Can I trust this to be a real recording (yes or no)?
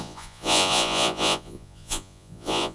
no